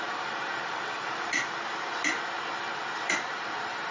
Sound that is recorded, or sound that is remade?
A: remade